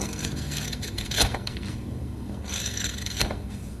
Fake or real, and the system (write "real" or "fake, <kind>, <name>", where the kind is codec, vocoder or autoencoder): fake, codec, SNAC